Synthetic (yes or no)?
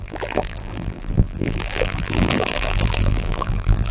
yes